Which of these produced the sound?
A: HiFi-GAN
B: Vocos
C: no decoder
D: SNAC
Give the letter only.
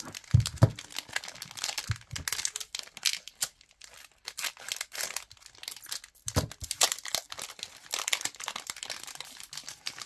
C